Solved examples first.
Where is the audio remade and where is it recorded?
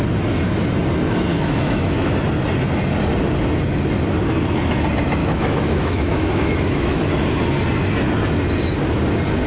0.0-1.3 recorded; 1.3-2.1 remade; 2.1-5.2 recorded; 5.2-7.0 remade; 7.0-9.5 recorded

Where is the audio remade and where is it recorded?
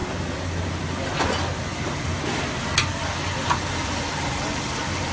0.0-5.1 recorded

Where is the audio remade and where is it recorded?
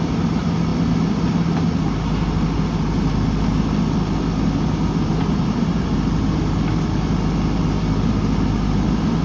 0.0-9.2 recorded